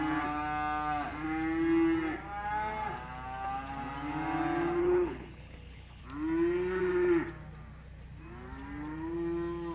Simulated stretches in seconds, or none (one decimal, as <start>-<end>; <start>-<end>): 4.8-6.0